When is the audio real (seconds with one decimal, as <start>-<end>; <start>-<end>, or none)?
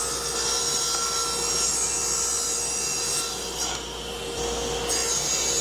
0.0-5.6